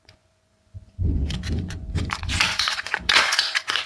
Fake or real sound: fake